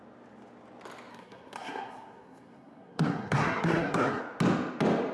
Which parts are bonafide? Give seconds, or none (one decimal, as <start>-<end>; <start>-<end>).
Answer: 0.0-1.1; 4.2-5.1